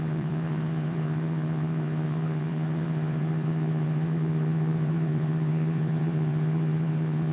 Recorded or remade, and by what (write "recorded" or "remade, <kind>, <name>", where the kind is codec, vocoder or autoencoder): remade, vocoder, WaveNeXt